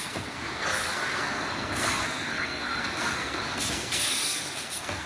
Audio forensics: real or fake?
fake